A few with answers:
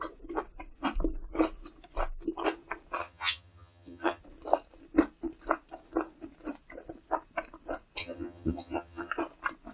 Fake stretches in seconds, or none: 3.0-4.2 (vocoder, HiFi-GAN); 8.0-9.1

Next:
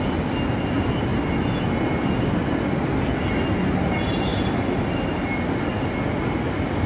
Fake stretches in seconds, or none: none

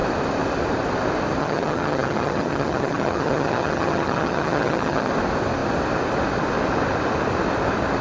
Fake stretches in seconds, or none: 1.4-5.1 (vocoder, HiFi-GAN)